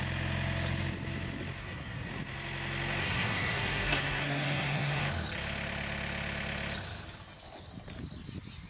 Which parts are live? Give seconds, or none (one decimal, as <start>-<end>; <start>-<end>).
0.0-1.6; 2.1-3.0; 5.0-8.7